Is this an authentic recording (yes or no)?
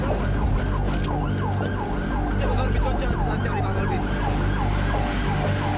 yes